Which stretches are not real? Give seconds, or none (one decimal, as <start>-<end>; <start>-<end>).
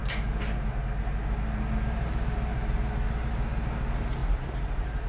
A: 4.2-5.1